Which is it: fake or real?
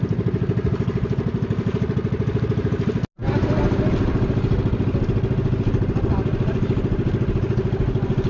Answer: real